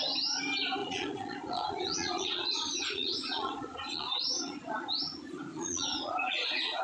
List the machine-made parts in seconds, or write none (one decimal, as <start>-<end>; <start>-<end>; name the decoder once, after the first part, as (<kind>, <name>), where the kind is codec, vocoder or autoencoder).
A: 0.8-4.9 (vocoder, Vocos); 5.5-6.8